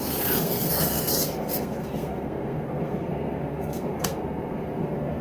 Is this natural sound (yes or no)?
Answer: no